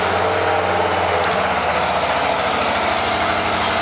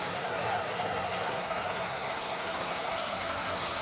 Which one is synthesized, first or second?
second